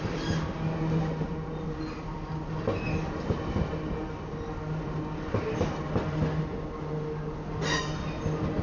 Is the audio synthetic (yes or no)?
no